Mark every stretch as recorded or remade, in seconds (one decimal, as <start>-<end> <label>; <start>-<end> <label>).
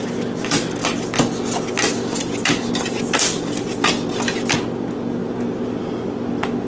0.0-5.2 recorded; 5.2-6.1 remade; 6.1-6.7 recorded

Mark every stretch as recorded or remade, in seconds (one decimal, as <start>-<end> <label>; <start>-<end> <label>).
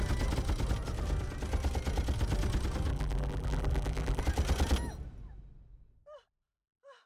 0.0-2.9 recorded; 2.9-4.2 remade; 4.2-7.1 recorded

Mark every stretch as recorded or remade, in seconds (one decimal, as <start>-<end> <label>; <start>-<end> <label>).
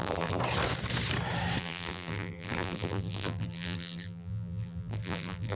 0.0-0.4 remade; 0.4-1.6 recorded; 1.6-5.5 remade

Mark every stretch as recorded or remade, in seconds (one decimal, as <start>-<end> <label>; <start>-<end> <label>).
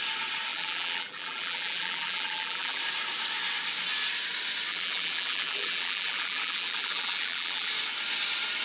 0.0-0.5 recorded; 0.5-2.8 remade; 2.8-4.7 recorded; 4.7-7.7 remade; 7.7-8.6 recorded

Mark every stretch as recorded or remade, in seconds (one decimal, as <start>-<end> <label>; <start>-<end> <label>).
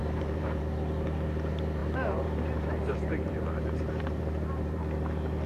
0.0-0.6 remade; 0.6-1.8 recorded; 1.8-4.8 remade; 4.8-5.5 recorded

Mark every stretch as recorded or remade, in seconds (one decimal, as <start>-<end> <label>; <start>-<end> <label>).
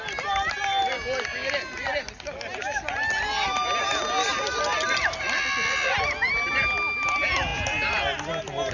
0.0-8.7 recorded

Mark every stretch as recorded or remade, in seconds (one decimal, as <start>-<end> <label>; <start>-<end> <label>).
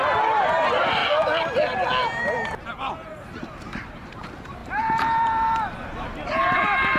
0.0-1.0 remade; 1.0-2.7 recorded; 2.7-7.0 remade